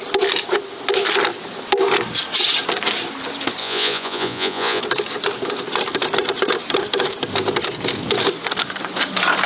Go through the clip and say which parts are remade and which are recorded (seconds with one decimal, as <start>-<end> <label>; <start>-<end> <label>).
0.0-3.6 recorded; 3.6-4.8 remade; 4.8-9.5 recorded